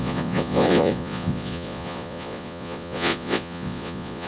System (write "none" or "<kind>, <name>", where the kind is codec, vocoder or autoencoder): vocoder, Vocos